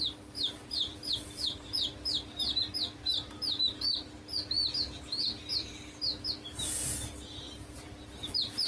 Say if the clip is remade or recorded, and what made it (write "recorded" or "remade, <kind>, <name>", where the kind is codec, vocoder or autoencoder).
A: remade, vocoder, BigVGAN v2